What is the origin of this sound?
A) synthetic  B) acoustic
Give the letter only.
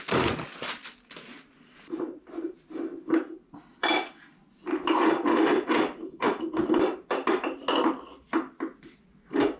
B